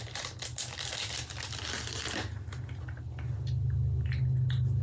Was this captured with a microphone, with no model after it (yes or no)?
yes